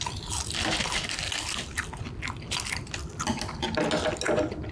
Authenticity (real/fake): real